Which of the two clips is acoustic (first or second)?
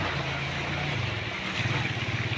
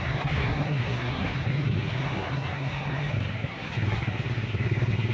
first